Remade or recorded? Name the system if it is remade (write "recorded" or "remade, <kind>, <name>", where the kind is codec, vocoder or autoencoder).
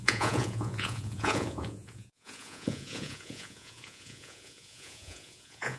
remade, vocoder, Vocos